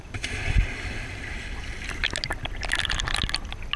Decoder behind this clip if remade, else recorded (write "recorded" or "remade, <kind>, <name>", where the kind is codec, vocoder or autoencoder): recorded